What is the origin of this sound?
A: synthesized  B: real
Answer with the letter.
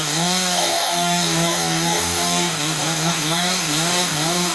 A